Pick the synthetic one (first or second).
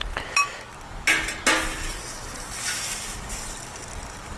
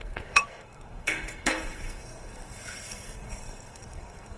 second